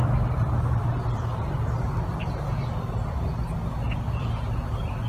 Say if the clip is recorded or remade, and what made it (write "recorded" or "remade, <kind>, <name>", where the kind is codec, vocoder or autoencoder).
recorded